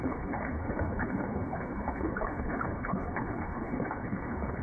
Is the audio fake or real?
fake